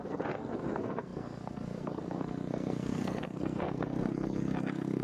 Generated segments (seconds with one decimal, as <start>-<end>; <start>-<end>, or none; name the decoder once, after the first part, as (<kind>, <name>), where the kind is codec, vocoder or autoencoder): 0.0-5.0 (codec, SNAC)